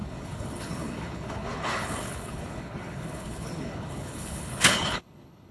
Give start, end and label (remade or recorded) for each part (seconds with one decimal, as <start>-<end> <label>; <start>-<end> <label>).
0.0-5.5 remade